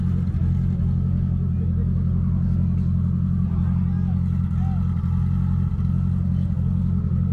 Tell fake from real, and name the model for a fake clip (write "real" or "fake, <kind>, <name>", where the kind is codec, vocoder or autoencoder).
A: real